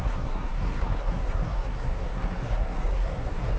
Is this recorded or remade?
remade